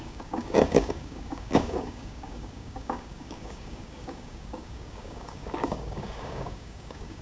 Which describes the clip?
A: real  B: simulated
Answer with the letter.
B